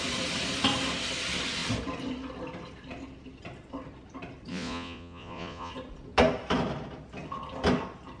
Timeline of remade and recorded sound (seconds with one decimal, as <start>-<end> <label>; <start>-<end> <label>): 0.0-4.5 recorded; 4.5-5.7 remade; 5.7-8.2 recorded